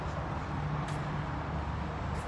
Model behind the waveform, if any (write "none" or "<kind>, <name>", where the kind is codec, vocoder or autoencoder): none